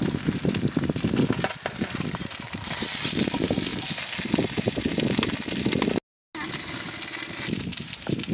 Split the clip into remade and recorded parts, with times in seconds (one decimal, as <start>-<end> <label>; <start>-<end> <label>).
0.0-8.3 recorded